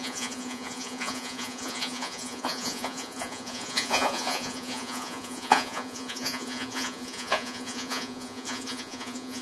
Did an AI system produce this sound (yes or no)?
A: yes